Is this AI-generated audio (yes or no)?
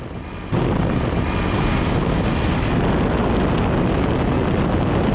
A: no